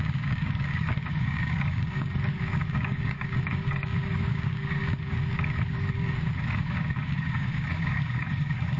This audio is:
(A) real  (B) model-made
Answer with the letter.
B